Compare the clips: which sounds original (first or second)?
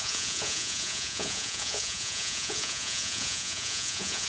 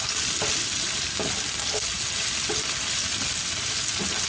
second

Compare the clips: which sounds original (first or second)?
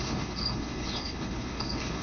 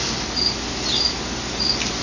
second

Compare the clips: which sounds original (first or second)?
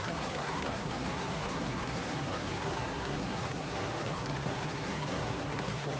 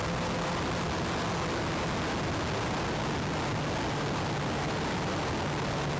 second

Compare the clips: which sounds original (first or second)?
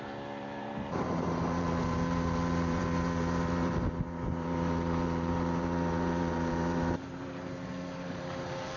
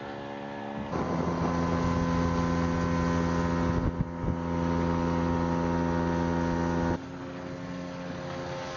second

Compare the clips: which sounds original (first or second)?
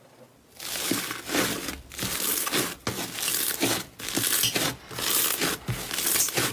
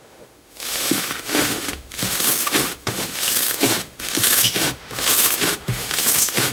first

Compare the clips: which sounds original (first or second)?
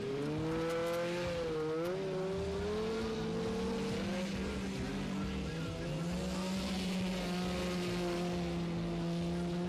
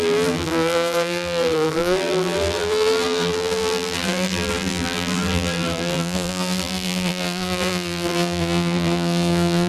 first